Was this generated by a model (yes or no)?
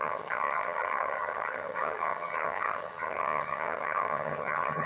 yes